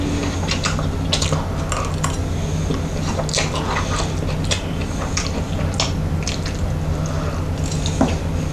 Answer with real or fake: real